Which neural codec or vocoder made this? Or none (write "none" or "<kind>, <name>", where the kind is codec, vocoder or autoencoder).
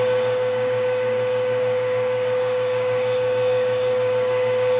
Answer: codec, DAC